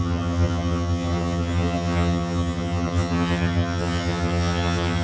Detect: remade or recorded remade